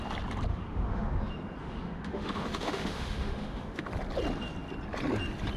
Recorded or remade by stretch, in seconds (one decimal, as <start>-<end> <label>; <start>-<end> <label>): 0.0-0.5 recorded; 0.5-1.2 remade; 1.2-1.6 recorded; 1.6-3.9 remade; 3.9-5.6 recorded